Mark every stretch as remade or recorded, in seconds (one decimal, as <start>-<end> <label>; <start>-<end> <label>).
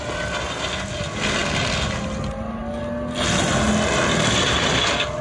0.0-5.2 recorded